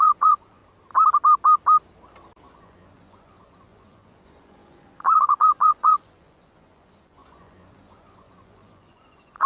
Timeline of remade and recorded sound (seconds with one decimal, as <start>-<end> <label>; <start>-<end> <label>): 0.0-0.6 remade; 0.6-2.5 recorded; 2.5-9.5 remade